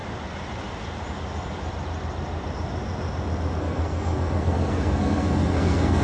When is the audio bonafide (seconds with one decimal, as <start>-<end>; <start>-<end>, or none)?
0.0-3.6